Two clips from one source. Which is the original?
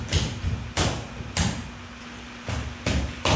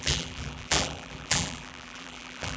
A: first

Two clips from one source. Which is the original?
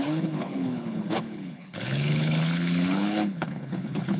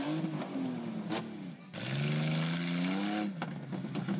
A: second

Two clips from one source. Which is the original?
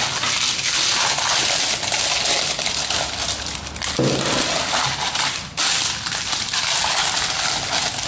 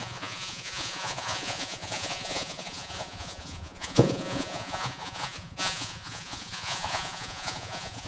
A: first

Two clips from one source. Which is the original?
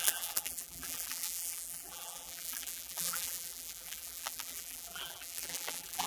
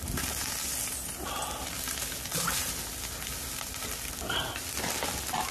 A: second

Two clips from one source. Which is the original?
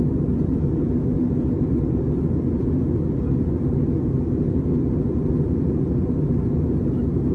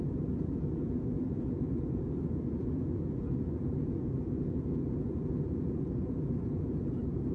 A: first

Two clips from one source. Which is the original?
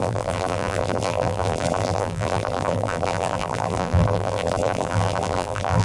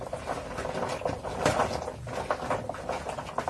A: second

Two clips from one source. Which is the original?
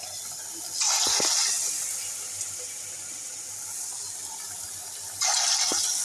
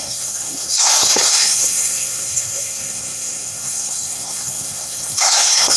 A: first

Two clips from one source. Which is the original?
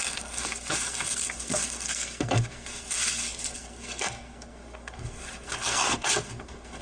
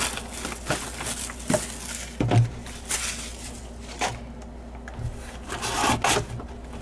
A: second